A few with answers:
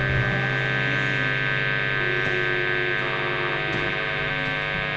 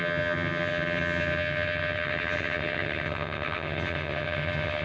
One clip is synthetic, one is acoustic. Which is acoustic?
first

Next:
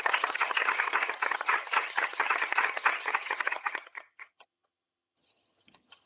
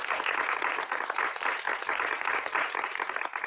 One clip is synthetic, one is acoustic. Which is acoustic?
second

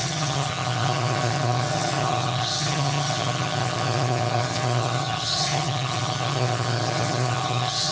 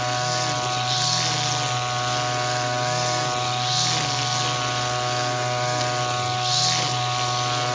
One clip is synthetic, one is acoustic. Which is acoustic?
second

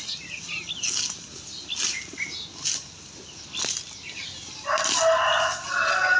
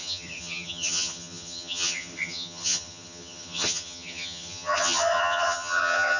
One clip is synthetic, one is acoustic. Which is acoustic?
first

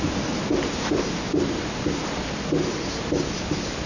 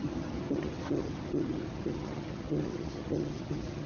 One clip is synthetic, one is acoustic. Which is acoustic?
first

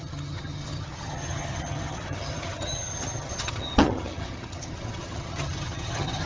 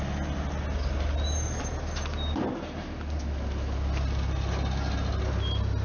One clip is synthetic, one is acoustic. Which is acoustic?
second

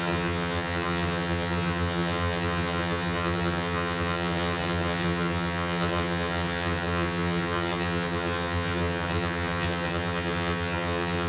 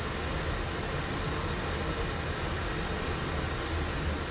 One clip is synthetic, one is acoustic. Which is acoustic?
second